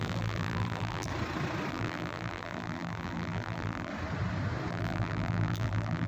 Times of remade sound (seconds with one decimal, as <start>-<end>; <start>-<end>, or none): 0.0-1.1; 1.7-3.9; 4.7-6.1